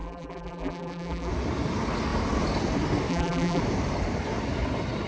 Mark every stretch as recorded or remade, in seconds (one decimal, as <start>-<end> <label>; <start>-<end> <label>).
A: 0.0-1.3 remade; 1.3-3.1 recorded; 3.1-3.6 remade; 3.6-5.1 recorded